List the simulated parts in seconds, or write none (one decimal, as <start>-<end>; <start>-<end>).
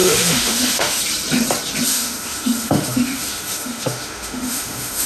0.0-1.0; 1.9-5.1